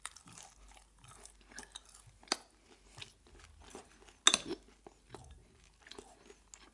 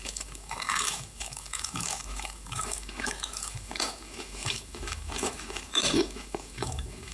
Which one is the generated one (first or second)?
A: second